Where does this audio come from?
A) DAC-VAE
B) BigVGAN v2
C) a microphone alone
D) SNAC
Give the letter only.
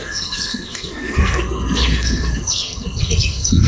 D